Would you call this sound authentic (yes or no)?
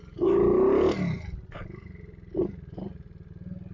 yes